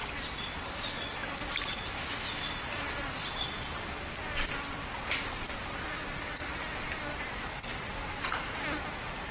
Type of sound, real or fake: real